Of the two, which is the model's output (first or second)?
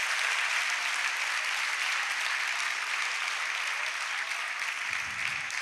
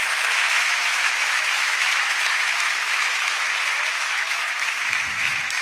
second